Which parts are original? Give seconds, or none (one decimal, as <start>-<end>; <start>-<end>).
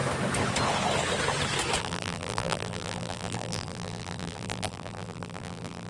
0.0-1.8